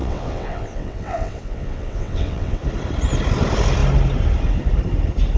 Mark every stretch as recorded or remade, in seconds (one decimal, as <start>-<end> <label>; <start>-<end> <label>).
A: 0.0-2.6 remade; 2.6-5.4 recorded